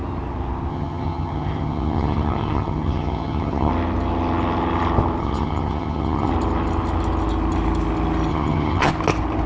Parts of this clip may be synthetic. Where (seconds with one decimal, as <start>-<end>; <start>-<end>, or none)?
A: 0.7-3.7; 5.2-6.3; 8.3-8.9